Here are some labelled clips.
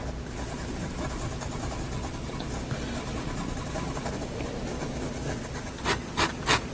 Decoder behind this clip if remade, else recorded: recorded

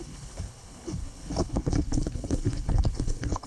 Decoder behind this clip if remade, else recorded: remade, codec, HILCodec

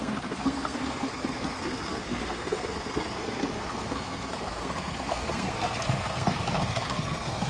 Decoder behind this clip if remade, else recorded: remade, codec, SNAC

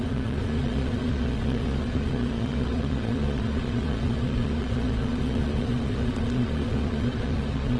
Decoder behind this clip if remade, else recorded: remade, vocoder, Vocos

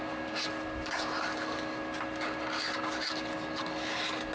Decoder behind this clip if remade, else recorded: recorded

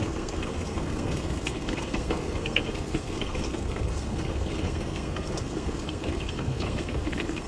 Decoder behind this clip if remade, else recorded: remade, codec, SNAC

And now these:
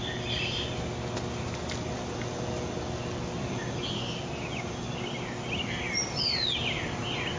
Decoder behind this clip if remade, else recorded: recorded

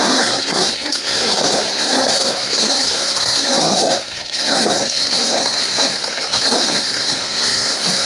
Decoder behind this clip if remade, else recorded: remade, codec, SNAC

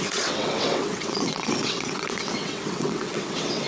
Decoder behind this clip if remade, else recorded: remade, vocoder, WaveNeXt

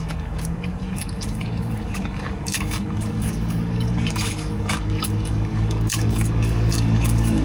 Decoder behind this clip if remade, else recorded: remade, codec, DAC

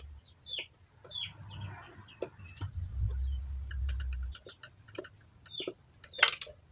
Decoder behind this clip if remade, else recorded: recorded